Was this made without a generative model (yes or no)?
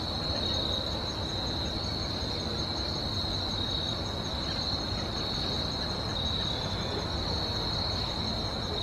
yes